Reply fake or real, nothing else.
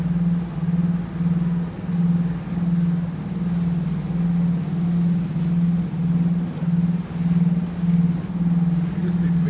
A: real